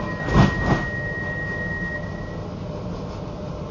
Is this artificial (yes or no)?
no